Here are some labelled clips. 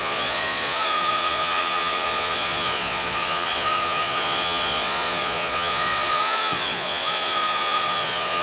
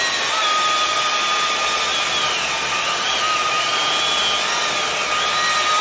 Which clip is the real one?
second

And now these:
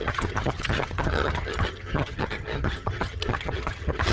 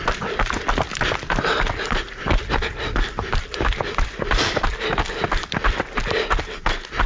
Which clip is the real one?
second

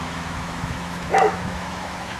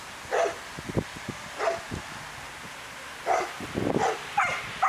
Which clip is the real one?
second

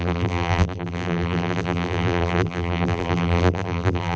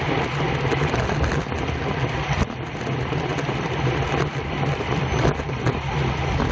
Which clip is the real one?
second